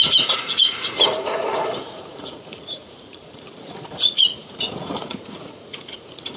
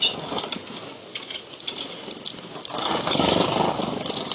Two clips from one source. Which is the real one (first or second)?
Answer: second